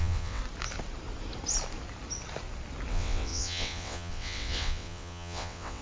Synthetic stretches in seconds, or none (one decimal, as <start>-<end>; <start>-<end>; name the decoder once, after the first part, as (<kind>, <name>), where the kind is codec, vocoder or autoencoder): 0.0-0.4 (vocoder, WaveNeXt); 2.9-5.8